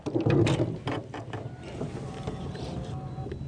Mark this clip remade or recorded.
recorded